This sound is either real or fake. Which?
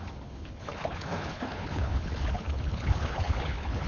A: fake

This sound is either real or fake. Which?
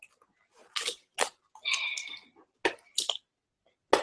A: real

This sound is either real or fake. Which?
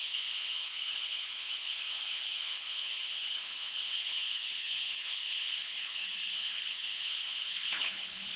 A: fake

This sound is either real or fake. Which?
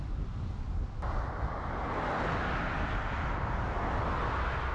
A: real